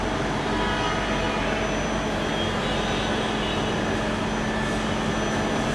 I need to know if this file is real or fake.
real